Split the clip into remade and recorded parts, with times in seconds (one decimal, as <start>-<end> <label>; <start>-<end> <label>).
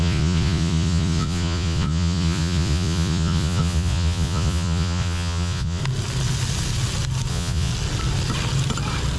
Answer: 0.0-5.8 remade; 5.8-7.3 recorded; 7.3-7.7 remade; 7.7-9.2 recorded